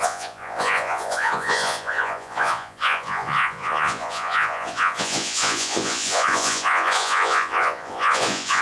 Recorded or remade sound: remade